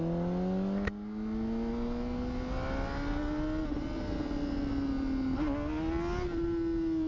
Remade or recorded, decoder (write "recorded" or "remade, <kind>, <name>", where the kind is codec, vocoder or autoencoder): recorded